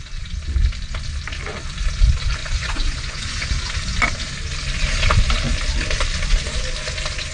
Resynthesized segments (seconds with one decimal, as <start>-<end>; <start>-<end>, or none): 2.4-3.4